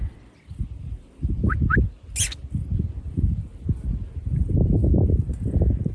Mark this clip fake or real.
real